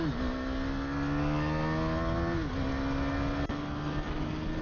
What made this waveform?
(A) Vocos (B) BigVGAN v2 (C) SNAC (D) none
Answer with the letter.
D